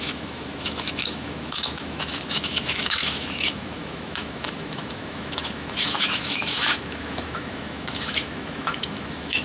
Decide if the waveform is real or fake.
fake